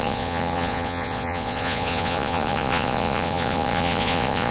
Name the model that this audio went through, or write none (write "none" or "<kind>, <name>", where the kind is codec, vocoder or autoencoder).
vocoder, Vocos